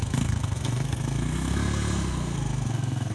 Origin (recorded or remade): remade